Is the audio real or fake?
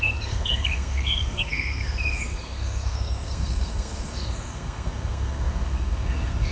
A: fake